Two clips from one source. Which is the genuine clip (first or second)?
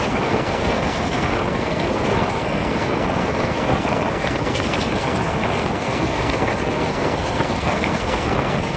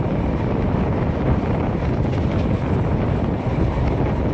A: second